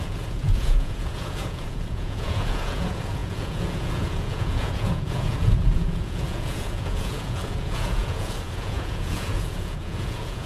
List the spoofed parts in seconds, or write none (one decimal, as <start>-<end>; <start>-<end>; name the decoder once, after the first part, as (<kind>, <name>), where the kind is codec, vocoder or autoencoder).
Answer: 0.0-10.5 (vocoder, Vocos)